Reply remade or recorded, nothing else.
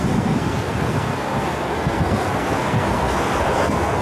remade